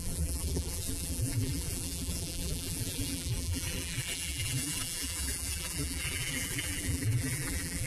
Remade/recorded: remade